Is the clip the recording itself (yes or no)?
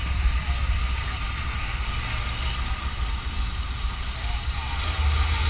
yes